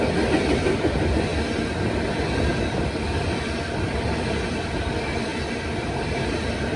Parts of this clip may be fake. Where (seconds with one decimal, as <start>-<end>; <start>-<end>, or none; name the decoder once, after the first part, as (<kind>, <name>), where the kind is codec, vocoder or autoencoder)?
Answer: 0.0-1.3 (vocoder, BigVGAN v2); 4.3-5.3; 5.8-6.8